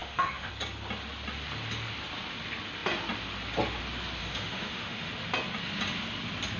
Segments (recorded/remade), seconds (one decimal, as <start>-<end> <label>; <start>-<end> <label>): 0.0-0.5 remade; 0.5-4.2 recorded; 4.2-5.1 remade; 5.1-6.6 recorded